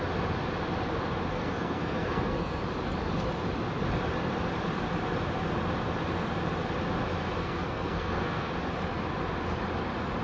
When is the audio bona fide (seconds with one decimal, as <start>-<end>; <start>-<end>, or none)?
0.0-1.3; 2.6-7.4; 8.5-10.2

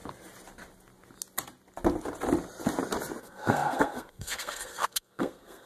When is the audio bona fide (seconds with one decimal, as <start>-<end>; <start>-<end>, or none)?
0.0-3.2